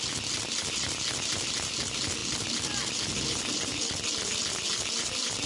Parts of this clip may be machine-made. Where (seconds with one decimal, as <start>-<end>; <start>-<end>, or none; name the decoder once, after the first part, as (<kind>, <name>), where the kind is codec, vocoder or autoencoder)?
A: none

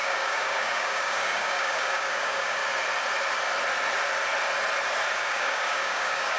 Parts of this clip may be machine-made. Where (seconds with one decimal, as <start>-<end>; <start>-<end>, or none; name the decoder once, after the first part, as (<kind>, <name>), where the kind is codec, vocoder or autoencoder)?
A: 0.0-2.6 (codec, DAC); 5.2-6.4

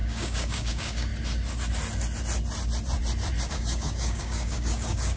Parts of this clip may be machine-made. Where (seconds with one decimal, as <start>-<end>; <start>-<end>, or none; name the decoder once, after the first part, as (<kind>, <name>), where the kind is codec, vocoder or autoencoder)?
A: 0.0-1.1 (codec, DAC); 3.5-5.2

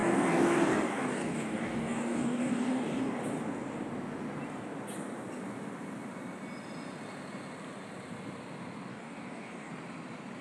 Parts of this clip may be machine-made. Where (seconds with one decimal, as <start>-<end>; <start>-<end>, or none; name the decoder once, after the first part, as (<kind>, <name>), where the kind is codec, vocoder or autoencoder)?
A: 0.0-3.2 (codec, DAC); 8.9-9.7

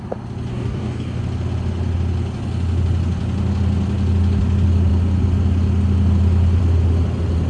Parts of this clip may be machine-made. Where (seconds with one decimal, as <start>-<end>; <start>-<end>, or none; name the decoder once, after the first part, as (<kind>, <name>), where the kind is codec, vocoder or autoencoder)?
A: 0.5-1.2 (codec, DAC)